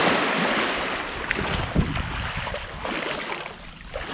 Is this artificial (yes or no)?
no